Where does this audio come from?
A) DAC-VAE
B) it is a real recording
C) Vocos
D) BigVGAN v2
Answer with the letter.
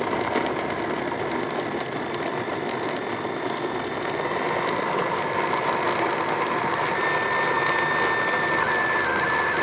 B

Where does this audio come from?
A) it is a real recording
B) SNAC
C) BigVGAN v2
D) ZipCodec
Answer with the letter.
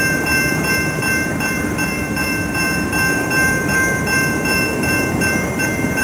C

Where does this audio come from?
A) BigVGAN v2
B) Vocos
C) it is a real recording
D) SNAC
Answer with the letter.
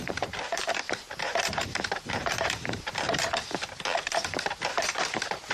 A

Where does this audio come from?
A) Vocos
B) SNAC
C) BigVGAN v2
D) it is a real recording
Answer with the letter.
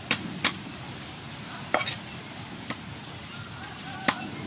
C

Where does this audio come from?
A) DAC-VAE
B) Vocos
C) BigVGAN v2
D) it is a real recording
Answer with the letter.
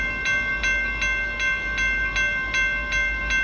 D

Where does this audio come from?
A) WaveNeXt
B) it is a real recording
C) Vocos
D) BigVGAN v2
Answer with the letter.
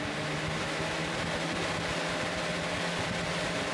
B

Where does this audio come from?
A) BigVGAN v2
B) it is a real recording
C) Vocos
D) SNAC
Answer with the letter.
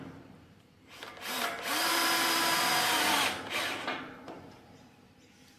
A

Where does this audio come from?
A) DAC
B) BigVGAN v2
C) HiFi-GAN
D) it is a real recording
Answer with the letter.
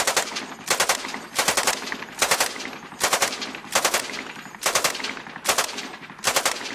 D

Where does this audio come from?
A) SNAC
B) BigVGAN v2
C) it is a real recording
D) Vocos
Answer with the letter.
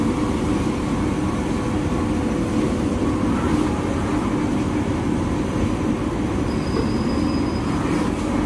C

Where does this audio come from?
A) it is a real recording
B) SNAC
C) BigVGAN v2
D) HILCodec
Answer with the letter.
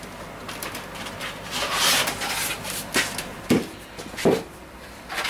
A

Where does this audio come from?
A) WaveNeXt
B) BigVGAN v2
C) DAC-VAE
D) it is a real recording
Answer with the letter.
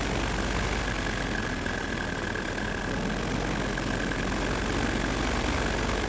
D